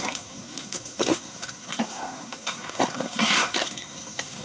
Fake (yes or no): yes